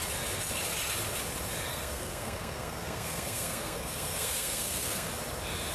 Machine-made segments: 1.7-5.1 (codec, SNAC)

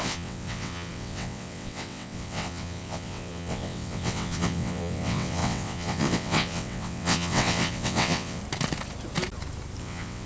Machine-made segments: 0.0-8.4 (vocoder, WaveNeXt); 9.8-10.3